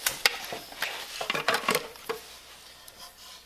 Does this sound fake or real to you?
real